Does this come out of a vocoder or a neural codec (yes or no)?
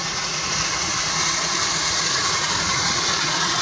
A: yes